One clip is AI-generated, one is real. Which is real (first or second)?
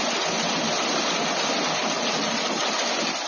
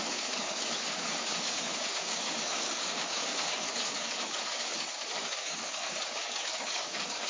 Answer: first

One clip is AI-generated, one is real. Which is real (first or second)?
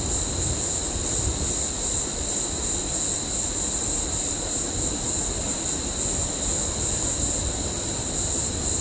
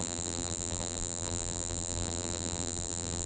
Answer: first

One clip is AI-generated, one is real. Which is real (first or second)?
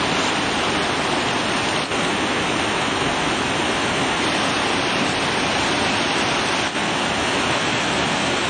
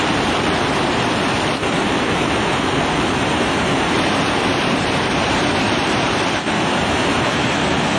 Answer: first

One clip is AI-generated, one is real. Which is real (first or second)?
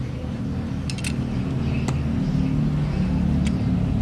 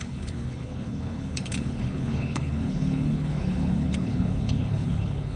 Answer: first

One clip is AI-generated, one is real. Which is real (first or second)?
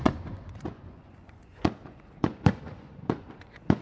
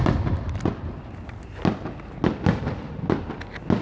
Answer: second